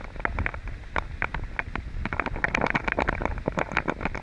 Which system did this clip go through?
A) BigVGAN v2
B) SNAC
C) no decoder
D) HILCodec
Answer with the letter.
C